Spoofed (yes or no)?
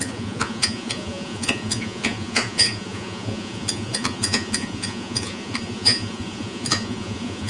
yes